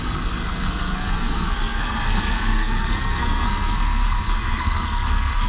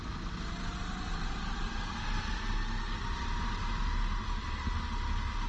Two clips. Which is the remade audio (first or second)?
first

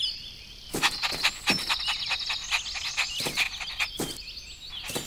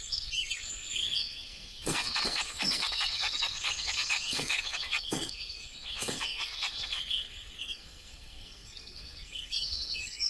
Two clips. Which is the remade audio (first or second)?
second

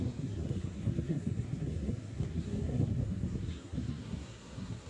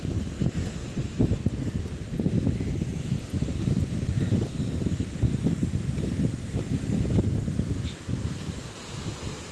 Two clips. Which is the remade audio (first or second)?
first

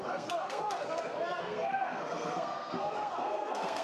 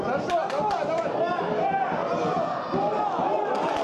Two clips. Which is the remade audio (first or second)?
first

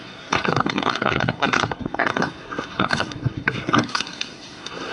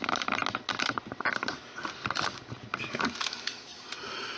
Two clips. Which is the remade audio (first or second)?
first